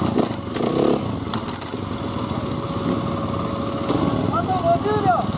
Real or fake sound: real